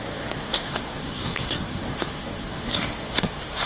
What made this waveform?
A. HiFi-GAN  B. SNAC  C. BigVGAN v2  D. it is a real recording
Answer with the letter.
B